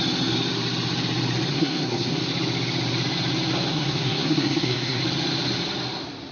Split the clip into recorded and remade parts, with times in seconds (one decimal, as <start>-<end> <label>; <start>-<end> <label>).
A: 0.0-1.5 recorded; 1.5-2.2 remade; 2.2-3.7 recorded; 3.7-5.0 remade; 5.0-6.3 recorded